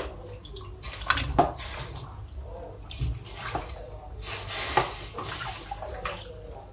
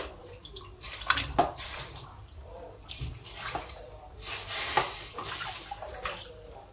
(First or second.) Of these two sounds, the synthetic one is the second